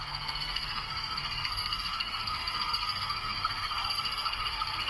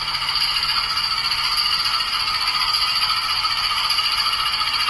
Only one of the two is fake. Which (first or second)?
first